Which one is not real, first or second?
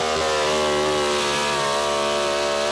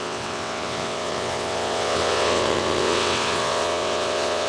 second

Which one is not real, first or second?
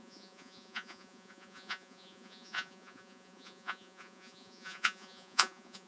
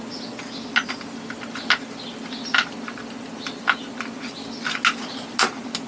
first